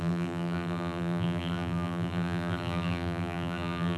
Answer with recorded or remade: remade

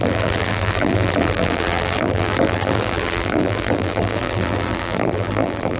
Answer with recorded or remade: remade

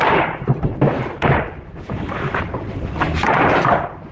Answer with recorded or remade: remade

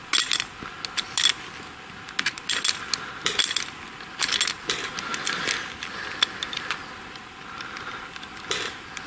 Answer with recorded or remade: recorded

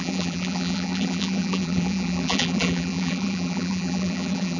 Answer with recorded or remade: remade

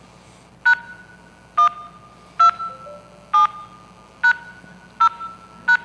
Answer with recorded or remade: recorded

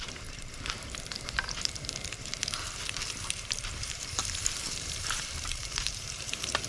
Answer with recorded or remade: remade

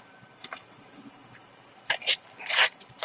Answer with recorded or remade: remade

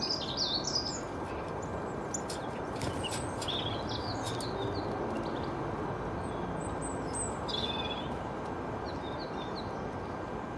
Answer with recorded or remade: recorded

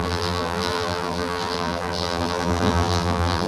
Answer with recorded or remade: remade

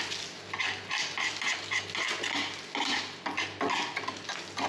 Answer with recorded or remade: recorded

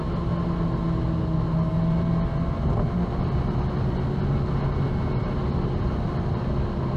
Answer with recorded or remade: recorded